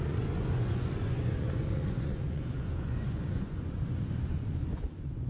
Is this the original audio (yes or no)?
no